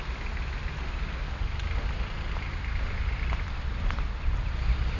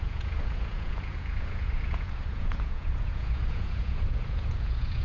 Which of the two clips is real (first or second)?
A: first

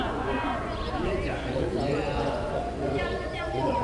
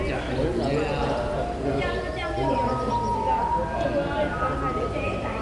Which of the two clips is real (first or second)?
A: second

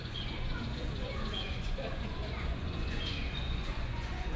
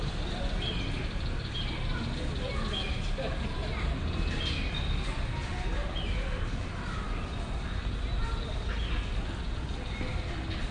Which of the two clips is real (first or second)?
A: second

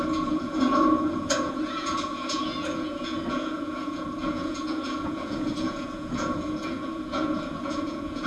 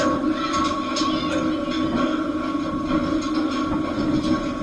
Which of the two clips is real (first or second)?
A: second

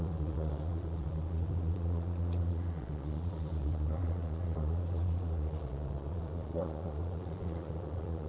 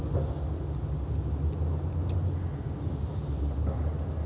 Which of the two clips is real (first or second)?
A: second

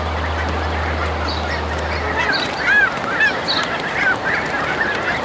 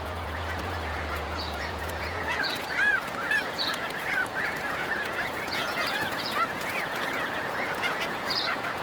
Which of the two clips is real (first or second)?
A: first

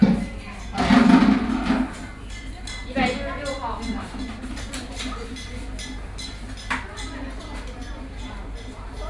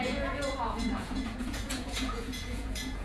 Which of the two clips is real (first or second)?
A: first